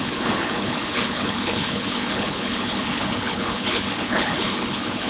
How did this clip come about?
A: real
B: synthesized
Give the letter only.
B